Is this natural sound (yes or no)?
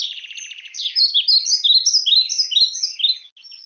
yes